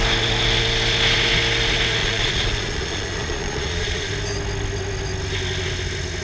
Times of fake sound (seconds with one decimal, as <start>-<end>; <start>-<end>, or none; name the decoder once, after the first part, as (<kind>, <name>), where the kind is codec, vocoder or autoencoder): 2.0-4.1 (vocoder, Vocos)